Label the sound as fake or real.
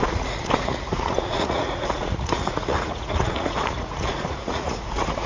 fake